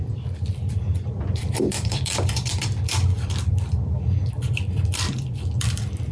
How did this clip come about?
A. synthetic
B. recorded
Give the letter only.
A